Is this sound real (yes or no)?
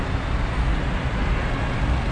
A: yes